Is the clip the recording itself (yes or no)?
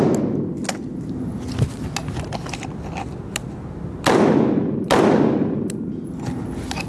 yes